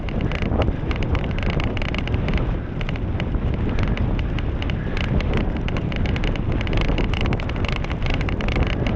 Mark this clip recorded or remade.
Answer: recorded